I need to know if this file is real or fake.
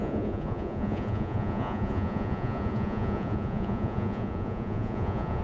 fake